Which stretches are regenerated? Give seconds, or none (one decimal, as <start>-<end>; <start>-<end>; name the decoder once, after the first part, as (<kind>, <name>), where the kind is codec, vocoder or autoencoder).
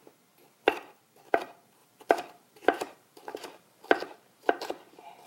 1.0-5.3 (vocoder, BigVGAN v2)